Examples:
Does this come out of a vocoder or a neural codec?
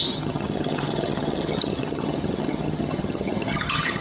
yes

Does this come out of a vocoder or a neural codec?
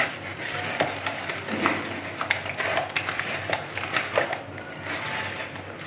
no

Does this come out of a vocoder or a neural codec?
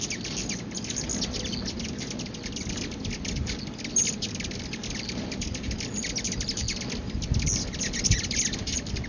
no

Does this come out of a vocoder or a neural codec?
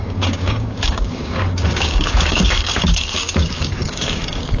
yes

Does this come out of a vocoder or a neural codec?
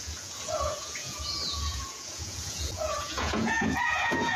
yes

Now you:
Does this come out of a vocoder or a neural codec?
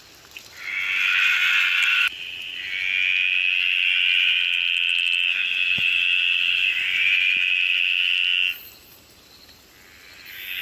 no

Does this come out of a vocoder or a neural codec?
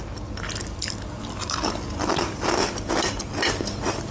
no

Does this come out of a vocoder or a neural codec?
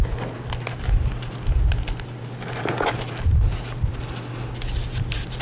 no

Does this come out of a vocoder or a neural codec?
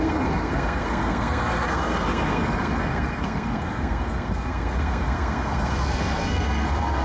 yes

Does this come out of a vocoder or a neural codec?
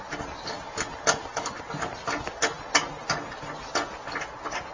no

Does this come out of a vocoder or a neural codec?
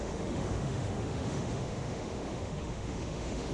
yes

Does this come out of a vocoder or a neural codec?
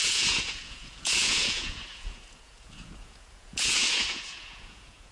yes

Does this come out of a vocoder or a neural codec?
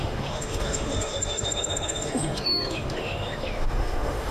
yes